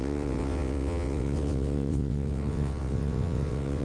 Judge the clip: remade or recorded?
remade